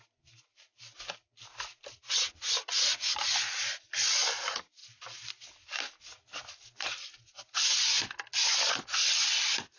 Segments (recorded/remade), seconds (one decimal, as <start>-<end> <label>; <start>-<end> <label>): 0.0-0.5 recorded; 0.5-2.6 remade; 2.6-4.8 recorded; 4.8-8.7 remade; 8.7-9.8 recorded